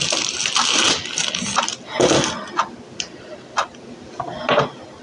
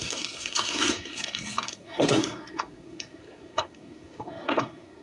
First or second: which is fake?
second